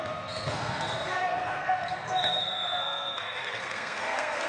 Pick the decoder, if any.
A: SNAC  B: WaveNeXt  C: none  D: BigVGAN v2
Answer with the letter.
A